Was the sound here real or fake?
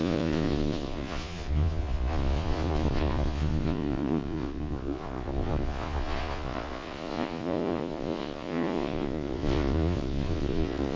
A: fake